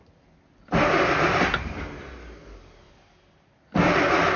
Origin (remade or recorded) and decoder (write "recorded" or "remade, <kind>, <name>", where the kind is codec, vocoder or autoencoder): recorded